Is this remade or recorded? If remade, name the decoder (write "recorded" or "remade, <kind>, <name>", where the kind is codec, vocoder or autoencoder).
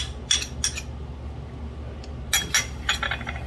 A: recorded